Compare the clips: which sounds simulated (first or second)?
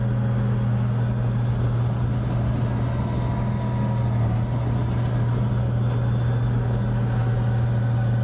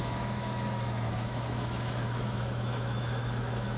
second